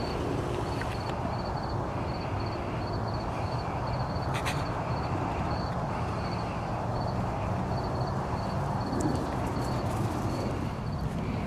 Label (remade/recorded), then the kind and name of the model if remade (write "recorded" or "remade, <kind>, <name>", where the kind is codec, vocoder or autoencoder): recorded